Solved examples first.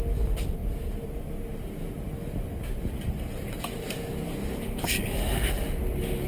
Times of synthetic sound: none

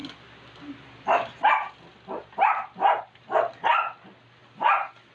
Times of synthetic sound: none